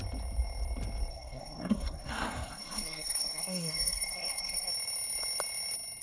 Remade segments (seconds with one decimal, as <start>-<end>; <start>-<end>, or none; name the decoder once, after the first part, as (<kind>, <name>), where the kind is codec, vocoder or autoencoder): 1.1-4.7 (codec, SNAC)